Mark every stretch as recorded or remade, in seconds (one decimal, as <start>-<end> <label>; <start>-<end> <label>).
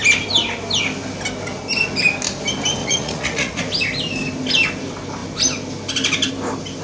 0.0-2.8 recorded; 2.8-3.6 remade; 3.6-6.8 recorded